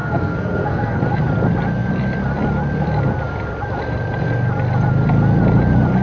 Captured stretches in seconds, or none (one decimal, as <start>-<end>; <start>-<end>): 1.0-6.0